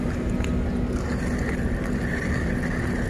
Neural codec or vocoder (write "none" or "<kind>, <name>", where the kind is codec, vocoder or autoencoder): none